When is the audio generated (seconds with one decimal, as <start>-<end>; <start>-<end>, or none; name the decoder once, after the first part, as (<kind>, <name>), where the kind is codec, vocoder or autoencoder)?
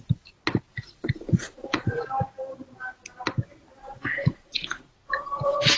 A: 0.7-2.0 (vocoder, Vocos); 3.8-5.8